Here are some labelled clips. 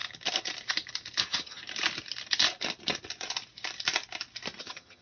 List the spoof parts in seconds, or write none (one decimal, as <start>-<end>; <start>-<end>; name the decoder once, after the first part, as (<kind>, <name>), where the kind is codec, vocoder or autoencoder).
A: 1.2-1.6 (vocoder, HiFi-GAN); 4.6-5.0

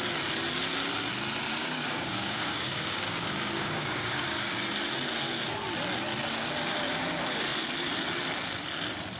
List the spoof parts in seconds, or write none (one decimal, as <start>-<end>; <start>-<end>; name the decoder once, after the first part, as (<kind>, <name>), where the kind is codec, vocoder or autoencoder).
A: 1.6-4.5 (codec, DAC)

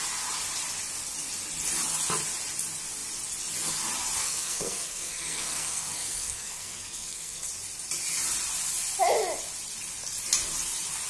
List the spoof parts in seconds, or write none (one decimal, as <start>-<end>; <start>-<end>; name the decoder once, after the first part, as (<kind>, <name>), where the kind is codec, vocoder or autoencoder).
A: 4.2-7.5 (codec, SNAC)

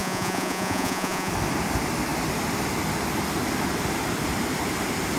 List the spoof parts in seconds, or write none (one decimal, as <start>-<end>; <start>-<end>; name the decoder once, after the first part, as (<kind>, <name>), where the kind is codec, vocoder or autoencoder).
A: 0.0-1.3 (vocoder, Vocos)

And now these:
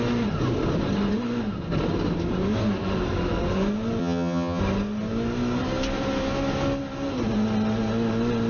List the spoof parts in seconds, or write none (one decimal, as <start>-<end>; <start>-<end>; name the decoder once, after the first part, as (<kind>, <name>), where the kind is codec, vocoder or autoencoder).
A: 4.0-4.6 (vocoder, HiFi-GAN)

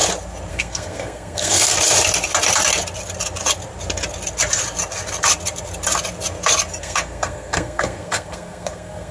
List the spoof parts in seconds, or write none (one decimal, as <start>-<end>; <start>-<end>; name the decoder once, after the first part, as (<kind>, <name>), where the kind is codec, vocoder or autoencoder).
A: 0.5-1.7 (codec, SNAC); 6.8-9.1

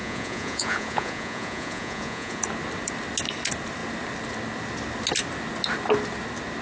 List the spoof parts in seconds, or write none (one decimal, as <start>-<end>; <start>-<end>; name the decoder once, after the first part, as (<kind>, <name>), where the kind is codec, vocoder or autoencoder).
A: 0.0-2.4 (vocoder, Vocos)

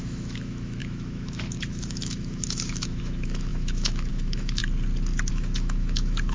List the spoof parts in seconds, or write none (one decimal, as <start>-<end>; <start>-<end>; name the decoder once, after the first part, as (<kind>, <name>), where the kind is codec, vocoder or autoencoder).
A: 0.0-4.6 (autoencoder, DAC-VAE); 5.3-6.3